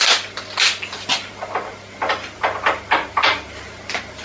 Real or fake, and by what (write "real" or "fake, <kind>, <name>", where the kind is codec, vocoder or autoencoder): real